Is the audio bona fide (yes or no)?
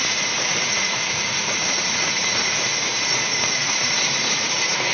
no